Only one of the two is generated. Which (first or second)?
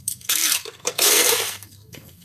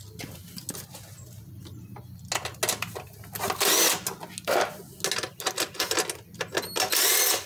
first